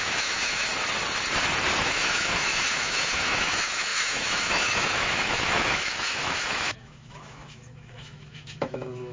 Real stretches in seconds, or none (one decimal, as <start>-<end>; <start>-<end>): 0.7-1.8